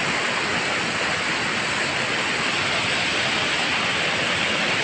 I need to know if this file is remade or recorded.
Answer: recorded